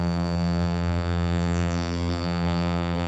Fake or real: fake